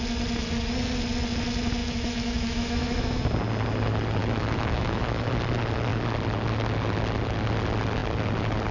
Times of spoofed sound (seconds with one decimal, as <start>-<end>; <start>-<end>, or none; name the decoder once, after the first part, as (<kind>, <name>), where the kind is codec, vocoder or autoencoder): 1.8-3.2 (autoencoder, DAC-VAE); 4.2-5.3